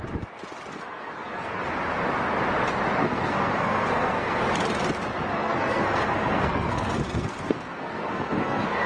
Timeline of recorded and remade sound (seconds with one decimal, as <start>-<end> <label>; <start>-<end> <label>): 0.0-0.7 recorded; 0.7-1.6 remade; 1.6-3.0 recorded; 3.0-4.4 remade; 4.4-5.3 recorded; 5.3-8.9 remade

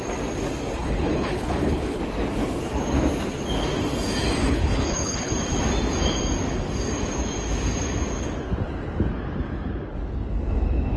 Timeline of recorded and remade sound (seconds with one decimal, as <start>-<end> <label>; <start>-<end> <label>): 0.0-0.8 recorded; 0.8-2.0 remade; 2.0-4.4 recorded; 4.4-5.3 remade; 5.3-11.0 recorded

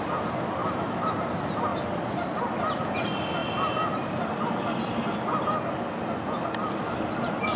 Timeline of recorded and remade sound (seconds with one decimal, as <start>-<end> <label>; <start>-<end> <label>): 0.0-0.6 recorded; 0.6-1.1 remade; 1.1-7.6 recorded

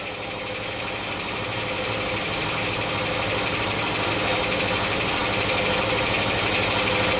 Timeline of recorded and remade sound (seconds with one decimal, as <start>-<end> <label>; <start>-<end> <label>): 0.0-7.2 recorded

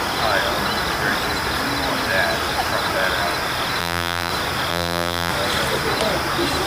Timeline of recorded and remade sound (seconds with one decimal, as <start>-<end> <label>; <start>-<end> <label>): 0.0-3.8 recorded; 3.8-4.3 remade; 4.3-4.7 recorded; 4.7-5.3 remade; 5.3-6.7 recorded

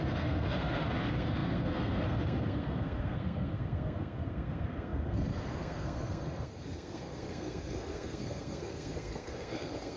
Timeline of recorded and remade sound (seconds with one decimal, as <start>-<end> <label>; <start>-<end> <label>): 0.0-10.0 remade